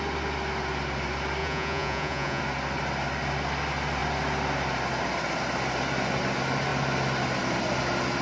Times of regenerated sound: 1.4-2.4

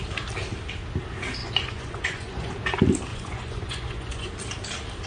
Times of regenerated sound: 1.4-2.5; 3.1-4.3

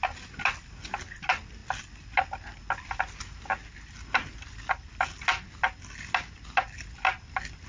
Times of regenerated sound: none